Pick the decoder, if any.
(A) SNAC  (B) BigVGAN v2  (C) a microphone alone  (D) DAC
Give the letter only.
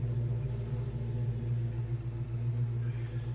C